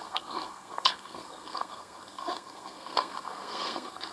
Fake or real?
fake